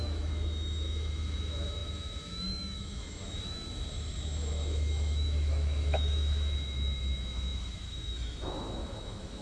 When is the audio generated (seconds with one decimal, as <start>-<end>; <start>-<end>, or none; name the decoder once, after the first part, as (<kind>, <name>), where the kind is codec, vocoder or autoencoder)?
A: 0.0-9.4 (autoencoder, DAC-VAE)